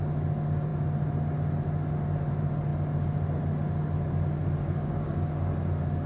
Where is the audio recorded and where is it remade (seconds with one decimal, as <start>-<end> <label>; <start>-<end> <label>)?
0.0-4.6 recorded; 4.6-5.3 remade; 5.3-6.1 recorded